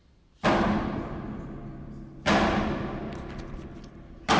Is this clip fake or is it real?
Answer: real